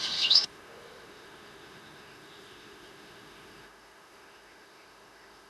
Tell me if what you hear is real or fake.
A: fake